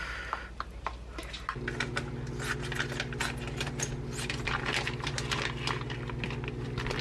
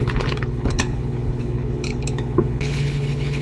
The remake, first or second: second